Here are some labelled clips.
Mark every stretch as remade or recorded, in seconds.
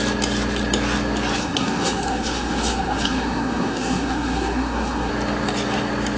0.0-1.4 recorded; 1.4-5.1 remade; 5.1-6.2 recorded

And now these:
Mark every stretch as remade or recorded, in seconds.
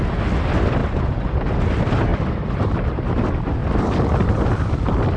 0.0-0.8 recorded; 0.8-1.5 remade; 1.5-2.1 recorded; 2.1-3.0 remade; 3.0-3.6 recorded; 3.6-4.3 remade; 4.3-5.2 recorded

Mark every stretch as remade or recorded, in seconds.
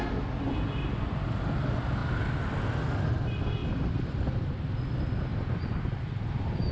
0.0-6.7 recorded